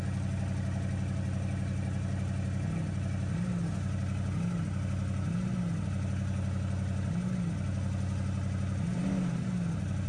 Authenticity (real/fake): real